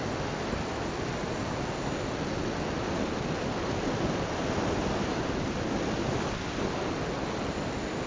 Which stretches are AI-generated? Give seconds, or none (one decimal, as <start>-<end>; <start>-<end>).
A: none